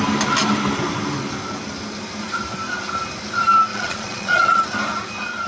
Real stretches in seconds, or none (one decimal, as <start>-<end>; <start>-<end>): 0.0-3.7; 4.6-5.5